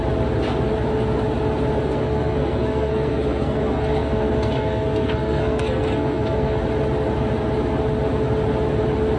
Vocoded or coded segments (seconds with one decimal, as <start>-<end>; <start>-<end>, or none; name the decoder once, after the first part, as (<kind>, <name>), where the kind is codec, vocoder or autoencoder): 1.9-6.6 (codec, SNAC)